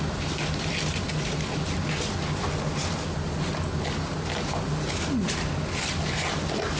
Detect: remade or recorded recorded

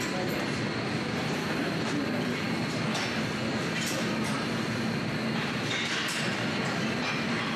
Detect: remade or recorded remade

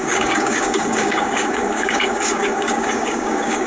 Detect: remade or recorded remade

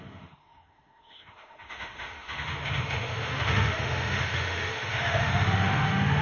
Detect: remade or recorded remade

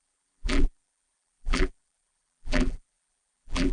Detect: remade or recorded remade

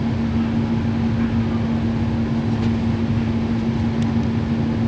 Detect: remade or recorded recorded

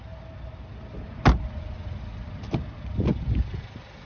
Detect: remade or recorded recorded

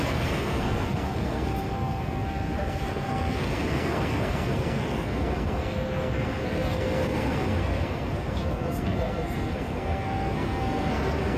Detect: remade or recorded remade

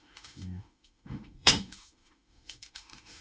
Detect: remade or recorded remade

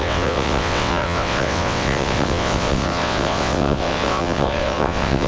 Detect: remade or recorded remade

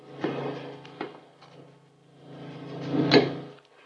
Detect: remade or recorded recorded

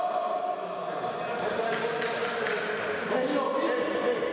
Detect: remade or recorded recorded